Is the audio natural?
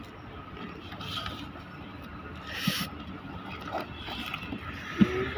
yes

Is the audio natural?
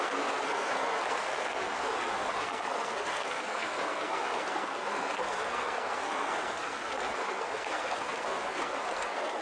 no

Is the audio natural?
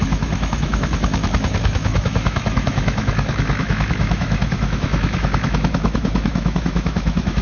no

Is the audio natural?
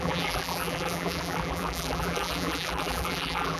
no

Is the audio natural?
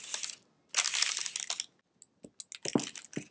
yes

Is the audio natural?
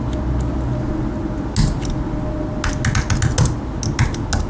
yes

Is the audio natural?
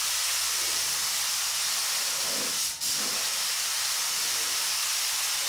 yes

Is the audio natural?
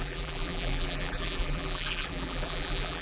no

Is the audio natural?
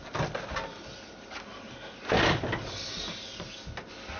yes